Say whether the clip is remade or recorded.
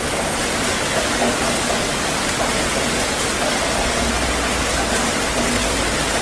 recorded